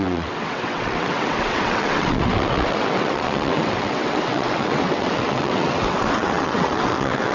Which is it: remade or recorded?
remade